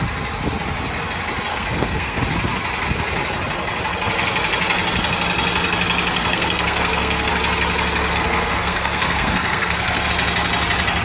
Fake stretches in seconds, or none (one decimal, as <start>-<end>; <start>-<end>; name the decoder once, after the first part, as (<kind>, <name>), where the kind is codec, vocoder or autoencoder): 1.5-2.2 (codec, SNAC); 6.1-7.3; 8.1-10.1